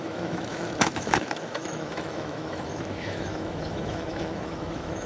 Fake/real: fake